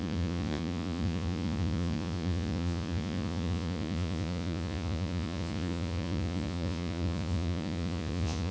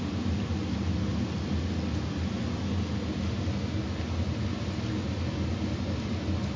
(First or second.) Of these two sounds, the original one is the second